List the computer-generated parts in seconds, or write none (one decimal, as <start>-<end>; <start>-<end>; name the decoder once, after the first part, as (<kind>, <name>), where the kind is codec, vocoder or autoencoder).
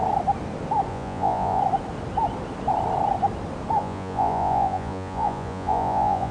0.9-1.6 (vocoder, Vocos); 3.8-6.3